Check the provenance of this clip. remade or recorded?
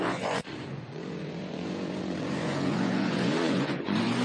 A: remade